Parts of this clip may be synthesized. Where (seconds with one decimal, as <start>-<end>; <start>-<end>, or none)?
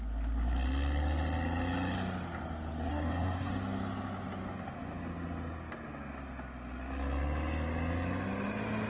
2.9-3.5